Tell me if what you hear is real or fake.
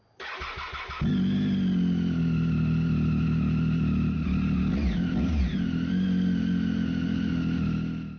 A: real